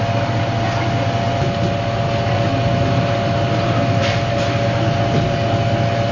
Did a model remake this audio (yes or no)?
no